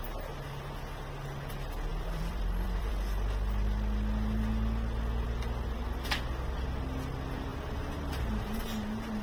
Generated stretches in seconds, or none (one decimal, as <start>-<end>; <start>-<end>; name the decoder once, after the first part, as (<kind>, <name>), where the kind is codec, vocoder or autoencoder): 1.9-2.9 (vocoder, BigVGAN v2); 7.5-8.2